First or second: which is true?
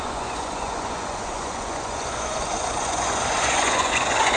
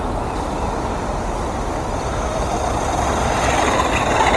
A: second